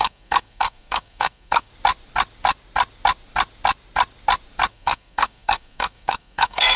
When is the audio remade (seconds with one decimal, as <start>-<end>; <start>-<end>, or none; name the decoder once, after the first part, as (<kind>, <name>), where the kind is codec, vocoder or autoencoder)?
0.0-1.7 (codec, SNAC); 4.7-6.8